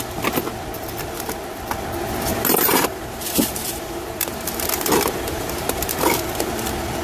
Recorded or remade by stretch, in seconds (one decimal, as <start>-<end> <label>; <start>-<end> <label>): 0.0-2.3 recorded; 2.3-6.5 remade; 6.5-7.0 recorded